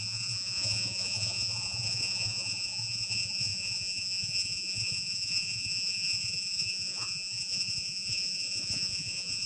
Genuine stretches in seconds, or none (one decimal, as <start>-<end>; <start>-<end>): none